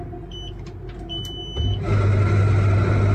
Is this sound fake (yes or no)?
no